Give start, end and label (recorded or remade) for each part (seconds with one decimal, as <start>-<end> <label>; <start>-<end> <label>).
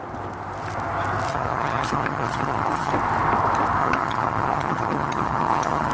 0.0-1.3 recorded; 1.3-2.9 remade; 2.9-3.8 recorded; 3.8-5.9 remade